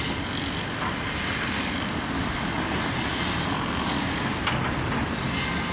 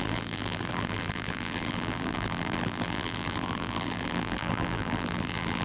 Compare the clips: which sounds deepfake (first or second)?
second